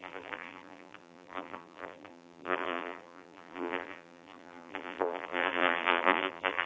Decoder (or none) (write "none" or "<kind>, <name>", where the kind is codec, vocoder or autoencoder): vocoder, BigVGAN v2